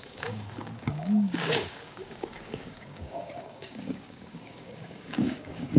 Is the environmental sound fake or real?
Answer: fake